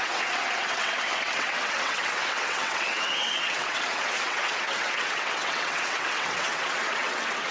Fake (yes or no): yes